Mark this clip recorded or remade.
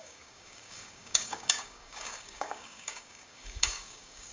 remade